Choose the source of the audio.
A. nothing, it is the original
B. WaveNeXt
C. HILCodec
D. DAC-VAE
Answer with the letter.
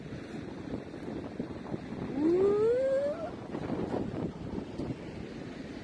A